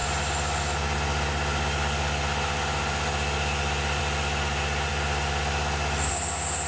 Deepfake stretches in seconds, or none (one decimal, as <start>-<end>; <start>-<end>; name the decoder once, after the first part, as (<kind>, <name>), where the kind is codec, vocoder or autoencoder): none